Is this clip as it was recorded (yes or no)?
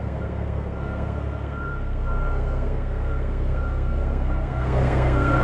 no